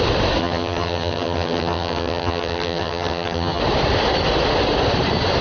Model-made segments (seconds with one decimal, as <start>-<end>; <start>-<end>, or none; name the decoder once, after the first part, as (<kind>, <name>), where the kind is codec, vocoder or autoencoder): 0.4-3.6 (vocoder, HiFi-GAN)